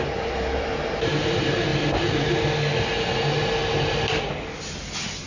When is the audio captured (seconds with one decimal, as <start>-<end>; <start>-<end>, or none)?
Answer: 0.0-5.3